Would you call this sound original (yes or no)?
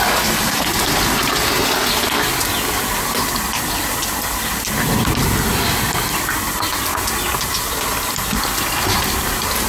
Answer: yes